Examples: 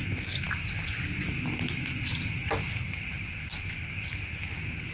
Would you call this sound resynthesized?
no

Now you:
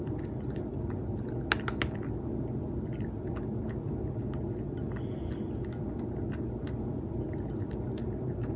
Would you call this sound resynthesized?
no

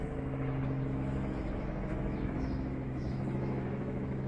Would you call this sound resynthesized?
yes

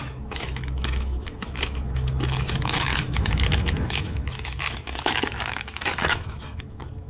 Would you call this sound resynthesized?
yes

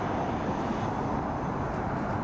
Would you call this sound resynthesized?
no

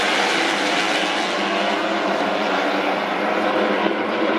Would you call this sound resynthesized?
no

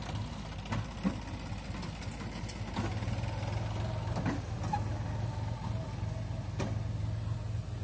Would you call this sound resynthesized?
no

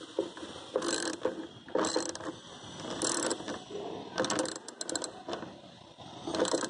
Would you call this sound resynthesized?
no